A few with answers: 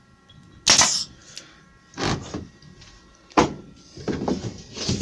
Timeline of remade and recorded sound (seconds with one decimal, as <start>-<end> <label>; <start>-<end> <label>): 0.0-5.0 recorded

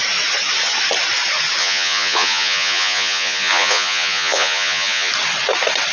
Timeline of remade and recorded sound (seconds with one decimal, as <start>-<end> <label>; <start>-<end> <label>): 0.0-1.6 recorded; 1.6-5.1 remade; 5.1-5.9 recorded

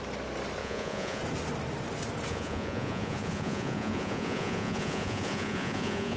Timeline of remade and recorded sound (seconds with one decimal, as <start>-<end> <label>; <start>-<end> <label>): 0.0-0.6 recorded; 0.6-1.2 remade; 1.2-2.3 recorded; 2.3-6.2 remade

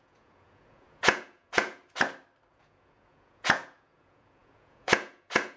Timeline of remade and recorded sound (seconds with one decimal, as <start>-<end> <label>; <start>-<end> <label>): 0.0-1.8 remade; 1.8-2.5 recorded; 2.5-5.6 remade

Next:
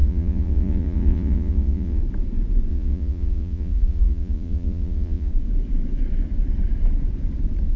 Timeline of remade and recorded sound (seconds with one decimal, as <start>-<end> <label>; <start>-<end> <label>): 0.0-2.0 remade; 2.0-2.7 recorded; 2.7-5.3 remade; 5.3-7.8 recorded